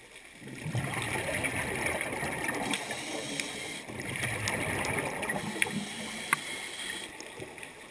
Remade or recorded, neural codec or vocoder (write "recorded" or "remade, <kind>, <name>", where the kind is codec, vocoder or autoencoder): recorded